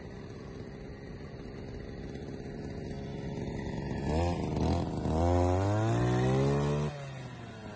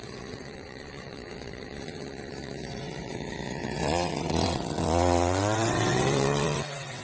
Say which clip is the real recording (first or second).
first